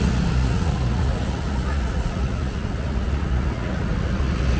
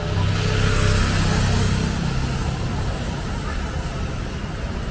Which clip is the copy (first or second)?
first